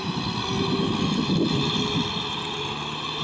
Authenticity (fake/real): real